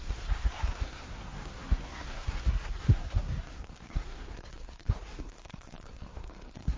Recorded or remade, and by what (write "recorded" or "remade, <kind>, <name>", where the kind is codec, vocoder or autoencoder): remade, codec, SNAC